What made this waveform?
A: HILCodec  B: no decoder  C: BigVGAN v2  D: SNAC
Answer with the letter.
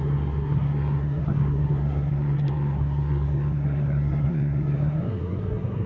D